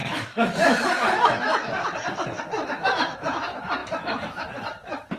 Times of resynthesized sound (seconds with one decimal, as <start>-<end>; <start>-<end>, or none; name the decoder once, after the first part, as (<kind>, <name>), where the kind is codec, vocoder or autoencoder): 0.0-5.2 (autoencoder, DAC-VAE)